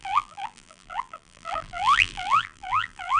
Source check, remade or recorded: remade